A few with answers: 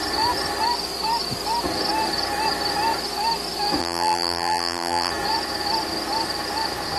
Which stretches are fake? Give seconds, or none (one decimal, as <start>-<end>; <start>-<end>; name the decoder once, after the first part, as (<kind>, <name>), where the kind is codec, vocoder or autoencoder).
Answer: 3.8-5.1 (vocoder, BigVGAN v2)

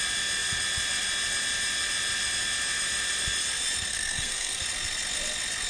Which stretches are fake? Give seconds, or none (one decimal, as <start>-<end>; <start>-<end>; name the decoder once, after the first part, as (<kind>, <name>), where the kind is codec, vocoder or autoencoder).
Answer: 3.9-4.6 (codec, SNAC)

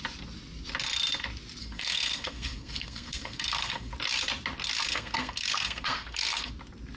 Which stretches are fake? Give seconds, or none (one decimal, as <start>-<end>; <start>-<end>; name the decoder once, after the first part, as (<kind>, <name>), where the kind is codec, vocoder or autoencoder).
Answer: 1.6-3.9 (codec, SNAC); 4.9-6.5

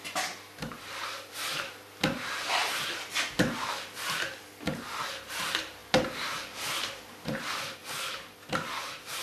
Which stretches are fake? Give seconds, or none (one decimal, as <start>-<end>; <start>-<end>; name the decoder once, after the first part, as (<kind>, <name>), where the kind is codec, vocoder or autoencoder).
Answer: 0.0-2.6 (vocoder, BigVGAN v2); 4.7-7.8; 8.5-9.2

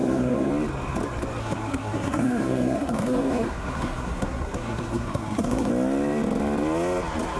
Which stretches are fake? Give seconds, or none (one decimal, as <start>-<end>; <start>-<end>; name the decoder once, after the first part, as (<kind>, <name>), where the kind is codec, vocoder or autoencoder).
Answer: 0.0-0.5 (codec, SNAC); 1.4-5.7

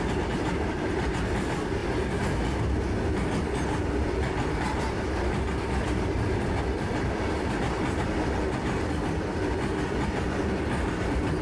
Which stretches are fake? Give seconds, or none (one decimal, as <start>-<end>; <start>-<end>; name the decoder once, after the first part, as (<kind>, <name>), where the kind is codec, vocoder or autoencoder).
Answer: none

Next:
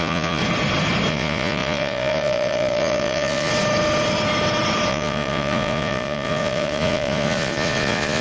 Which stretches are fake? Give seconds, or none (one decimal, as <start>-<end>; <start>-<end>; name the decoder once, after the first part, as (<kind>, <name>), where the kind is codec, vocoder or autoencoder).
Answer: 0.0-0.4 (vocoder, Vocos); 1.1-3.5; 4.9-8.2

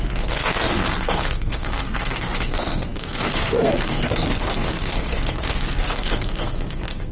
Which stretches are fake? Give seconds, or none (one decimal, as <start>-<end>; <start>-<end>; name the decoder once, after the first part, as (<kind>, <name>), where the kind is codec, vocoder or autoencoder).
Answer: 0.0-7.1 (codec, SNAC)